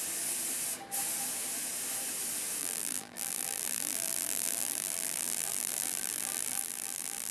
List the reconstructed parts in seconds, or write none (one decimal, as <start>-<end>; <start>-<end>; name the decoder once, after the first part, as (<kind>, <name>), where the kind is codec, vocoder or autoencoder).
2.6-7.3 (vocoder, BigVGAN v2)